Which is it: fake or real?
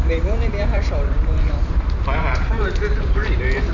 fake